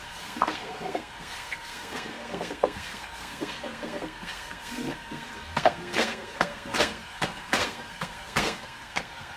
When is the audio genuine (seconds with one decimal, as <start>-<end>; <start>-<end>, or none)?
none